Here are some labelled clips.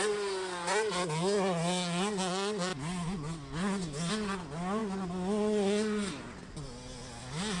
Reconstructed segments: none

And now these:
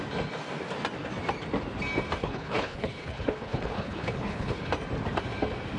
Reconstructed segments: 2.2-4.7

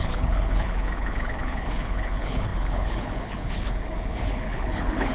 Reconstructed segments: 0.0-5.1

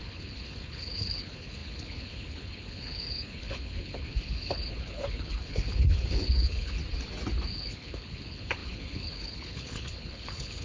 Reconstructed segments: 0.0-6.8; 7.5-10.6